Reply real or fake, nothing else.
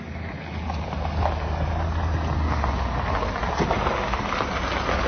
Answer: real